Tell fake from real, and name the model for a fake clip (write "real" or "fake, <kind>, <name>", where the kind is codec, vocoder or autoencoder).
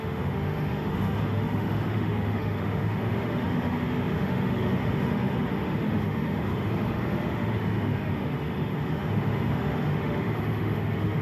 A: fake, autoencoder, DAC-VAE